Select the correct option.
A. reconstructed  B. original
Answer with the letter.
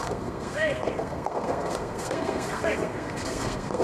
A